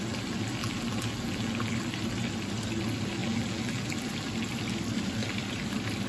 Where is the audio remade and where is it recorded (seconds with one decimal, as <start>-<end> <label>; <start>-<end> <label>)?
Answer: 0.0-0.6 recorded; 0.6-1.7 remade; 1.7-3.2 recorded; 3.2-4.1 remade; 4.1-6.1 recorded